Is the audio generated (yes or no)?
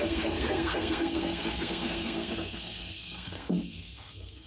yes